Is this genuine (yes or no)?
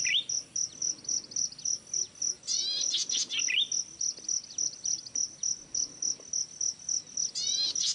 yes